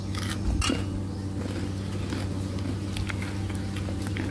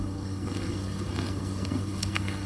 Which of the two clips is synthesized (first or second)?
second